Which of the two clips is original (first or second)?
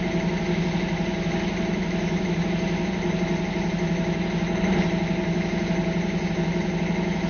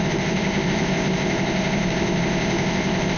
first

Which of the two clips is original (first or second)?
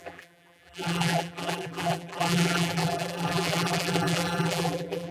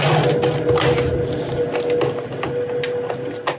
second